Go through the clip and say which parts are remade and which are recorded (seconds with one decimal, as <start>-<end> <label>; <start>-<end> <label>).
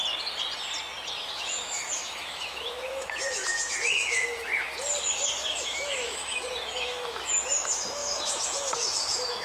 0.0-1.2 recorded; 1.2-4.5 remade; 4.5-5.0 recorded; 5.0-9.4 remade